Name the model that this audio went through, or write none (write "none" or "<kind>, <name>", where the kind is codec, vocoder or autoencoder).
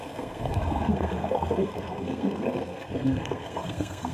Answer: codec, SNAC